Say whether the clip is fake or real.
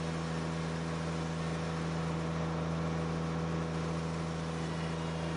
real